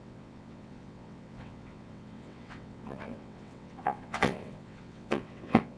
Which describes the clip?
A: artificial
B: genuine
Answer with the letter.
A